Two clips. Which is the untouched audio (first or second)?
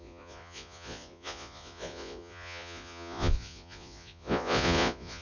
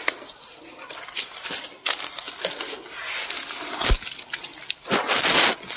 second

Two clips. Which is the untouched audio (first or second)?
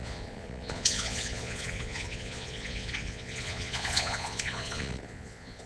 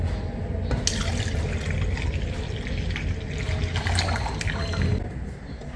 second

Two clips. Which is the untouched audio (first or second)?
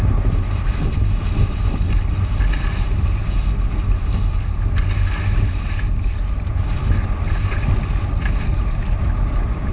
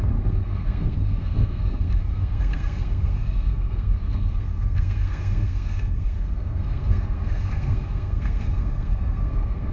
first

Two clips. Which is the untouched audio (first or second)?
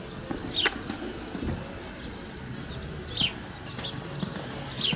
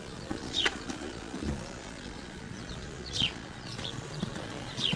first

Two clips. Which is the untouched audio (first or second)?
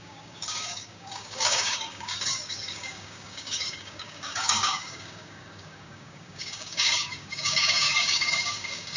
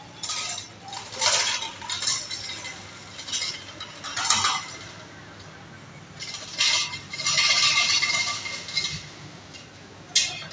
second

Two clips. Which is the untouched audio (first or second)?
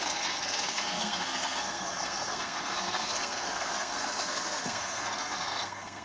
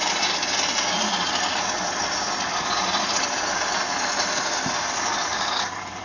second